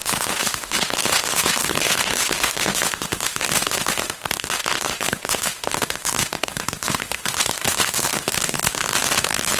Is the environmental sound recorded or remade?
remade